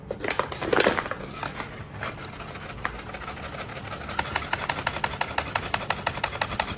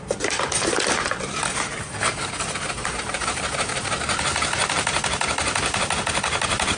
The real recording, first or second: first